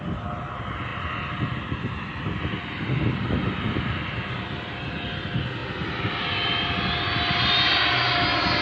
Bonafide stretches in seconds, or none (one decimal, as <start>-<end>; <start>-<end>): 0.0-8.6